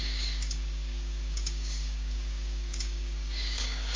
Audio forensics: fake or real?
fake